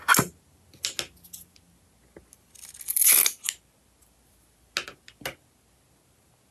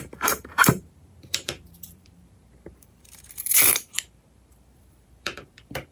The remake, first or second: second